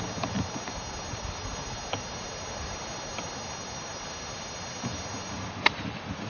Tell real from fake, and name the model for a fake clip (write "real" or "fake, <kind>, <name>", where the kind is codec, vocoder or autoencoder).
fake, vocoder, BigVGAN v2